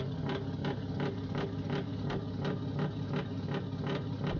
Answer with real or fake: real